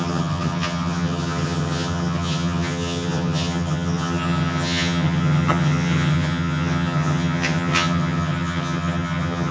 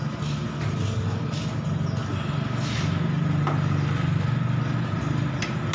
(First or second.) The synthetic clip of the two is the first